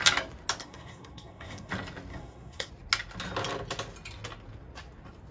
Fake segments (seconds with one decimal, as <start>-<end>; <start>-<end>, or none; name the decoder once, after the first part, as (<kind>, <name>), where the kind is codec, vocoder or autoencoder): 0.6-1.7 (codec, SNAC); 2.1-2.7